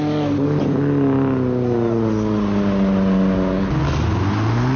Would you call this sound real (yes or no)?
yes